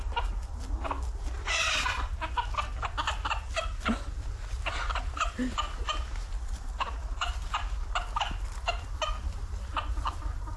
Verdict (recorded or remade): recorded